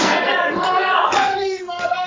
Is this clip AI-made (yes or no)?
yes